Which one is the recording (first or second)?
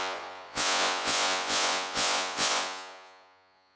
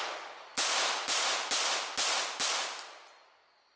second